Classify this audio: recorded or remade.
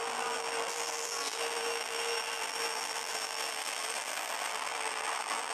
remade